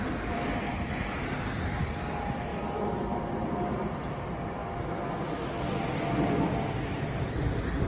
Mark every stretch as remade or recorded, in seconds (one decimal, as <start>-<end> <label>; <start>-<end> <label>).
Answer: 0.0-2.5 remade; 2.5-3.7 recorded; 3.7-4.6 remade; 4.6-5.8 recorded; 5.8-7.9 remade